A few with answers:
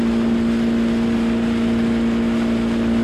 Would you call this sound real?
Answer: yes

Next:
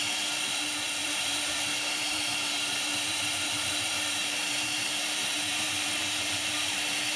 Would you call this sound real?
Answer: no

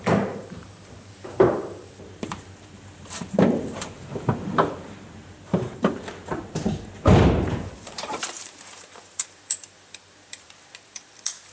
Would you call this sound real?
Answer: no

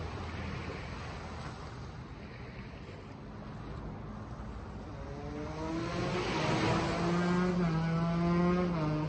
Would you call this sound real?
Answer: yes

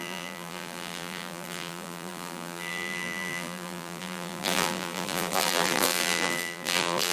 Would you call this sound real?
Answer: no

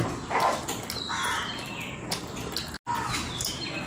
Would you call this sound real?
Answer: yes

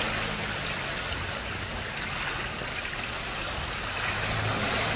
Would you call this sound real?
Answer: yes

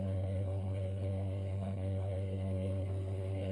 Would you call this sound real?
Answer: no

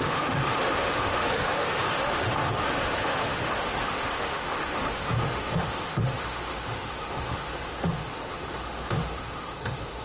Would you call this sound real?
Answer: no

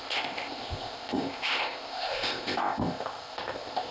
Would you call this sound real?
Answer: no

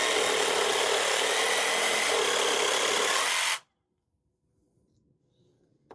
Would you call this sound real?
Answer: yes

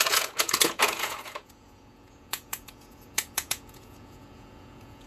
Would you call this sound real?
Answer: no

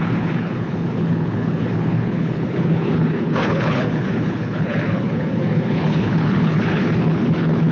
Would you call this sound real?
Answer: no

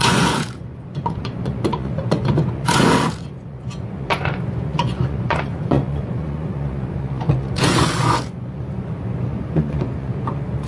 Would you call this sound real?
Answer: no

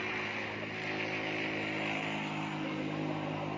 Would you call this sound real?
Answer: yes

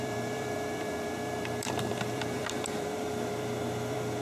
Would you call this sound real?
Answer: no